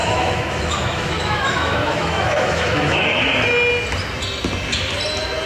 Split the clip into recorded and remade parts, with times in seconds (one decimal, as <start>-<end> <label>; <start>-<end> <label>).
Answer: 0.0-3.3 remade; 3.3-5.5 recorded